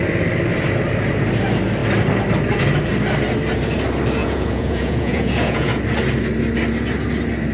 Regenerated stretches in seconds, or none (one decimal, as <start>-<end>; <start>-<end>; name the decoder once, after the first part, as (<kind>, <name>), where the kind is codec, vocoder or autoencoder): 4.2-5.8 (vocoder, Vocos)